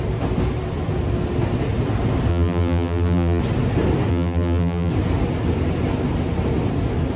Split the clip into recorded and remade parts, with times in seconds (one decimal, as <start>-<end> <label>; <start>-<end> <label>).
0.0-2.3 recorded; 2.3-3.4 remade; 3.4-4.1 recorded; 4.1-4.9 remade; 4.9-7.2 recorded